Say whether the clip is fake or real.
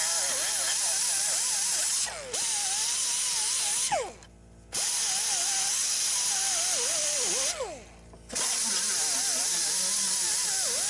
real